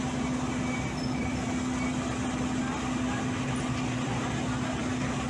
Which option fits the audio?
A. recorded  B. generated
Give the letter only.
A